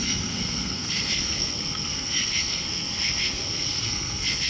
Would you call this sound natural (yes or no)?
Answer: no